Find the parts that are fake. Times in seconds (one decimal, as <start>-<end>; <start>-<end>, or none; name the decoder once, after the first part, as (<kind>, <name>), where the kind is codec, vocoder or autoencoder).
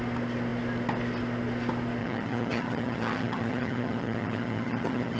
2.0-5.2 (vocoder, HiFi-GAN)